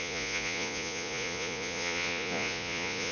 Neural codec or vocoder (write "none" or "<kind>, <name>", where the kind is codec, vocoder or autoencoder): vocoder, Vocos